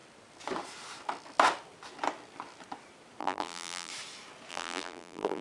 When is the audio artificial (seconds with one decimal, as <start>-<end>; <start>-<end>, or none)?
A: 3.2-3.9; 4.5-5.4